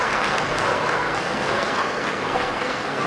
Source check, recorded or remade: remade